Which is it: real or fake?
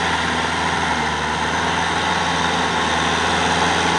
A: real